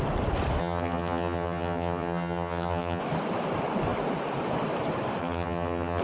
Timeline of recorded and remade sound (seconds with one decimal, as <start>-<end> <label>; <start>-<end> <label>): 0.0-0.6 recorded; 0.6-3.0 remade; 3.0-5.2 recorded; 5.2-6.0 remade